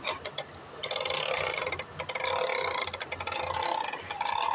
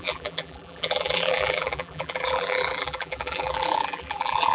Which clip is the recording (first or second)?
first